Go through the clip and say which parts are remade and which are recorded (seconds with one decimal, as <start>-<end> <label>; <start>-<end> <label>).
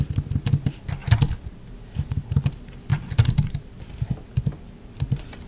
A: 0.0-1.0 remade; 1.0-2.4 recorded; 2.4-5.5 remade